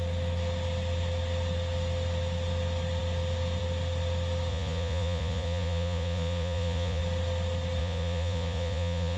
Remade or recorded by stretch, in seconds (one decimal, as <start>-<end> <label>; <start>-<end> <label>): 0.0-4.5 recorded; 4.5-7.0 remade; 7.0-7.8 recorded; 7.8-9.2 remade